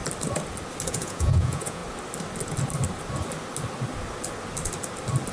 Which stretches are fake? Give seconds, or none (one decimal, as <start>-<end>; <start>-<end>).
0.9-1.8

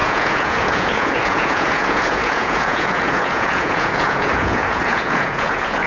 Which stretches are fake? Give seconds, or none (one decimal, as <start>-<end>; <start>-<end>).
0.0-5.9